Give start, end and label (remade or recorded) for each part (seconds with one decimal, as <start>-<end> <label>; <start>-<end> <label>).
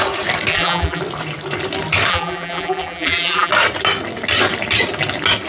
0.0-0.5 recorded; 0.5-1.0 remade; 1.0-2.1 recorded; 2.1-3.5 remade; 3.5-5.5 recorded